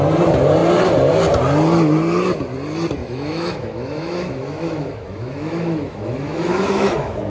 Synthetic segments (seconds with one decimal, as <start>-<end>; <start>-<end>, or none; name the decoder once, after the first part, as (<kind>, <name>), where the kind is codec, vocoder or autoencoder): 3.0-7.3 (autoencoder, DAC-VAE)